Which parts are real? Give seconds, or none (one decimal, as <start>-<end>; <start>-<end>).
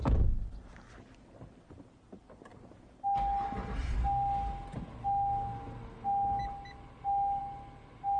0.0-8.2